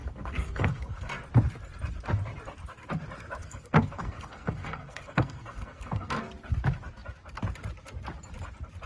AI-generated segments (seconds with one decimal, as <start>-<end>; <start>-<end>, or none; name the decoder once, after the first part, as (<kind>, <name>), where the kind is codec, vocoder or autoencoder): 0.0-1.1 (codec, SNAC); 3.4-6.2